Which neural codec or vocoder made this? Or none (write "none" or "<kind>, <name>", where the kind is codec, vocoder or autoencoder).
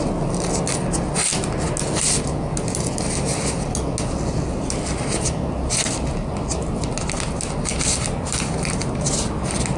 none